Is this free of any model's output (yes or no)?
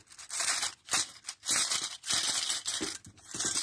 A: yes